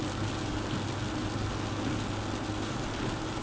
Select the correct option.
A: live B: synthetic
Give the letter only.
A